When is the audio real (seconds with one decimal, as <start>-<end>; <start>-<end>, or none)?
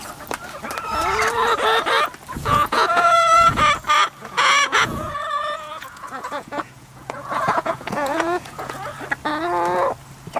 0.0-2.4; 3.6-4.2; 8.9-10.4